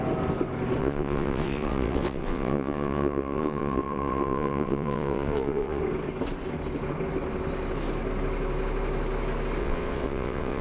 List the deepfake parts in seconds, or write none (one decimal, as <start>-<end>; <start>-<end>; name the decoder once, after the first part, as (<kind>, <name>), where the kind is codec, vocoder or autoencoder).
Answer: 0.8-5.8 (vocoder, WaveNeXt); 9.6-10.6